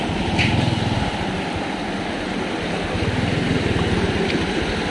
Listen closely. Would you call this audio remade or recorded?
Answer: recorded